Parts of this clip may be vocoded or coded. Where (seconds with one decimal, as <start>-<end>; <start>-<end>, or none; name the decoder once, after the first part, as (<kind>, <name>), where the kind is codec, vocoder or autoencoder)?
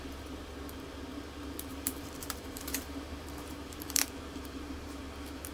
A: 1.7-5.0 (vocoder, BigVGAN v2)